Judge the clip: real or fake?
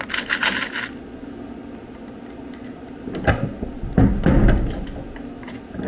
real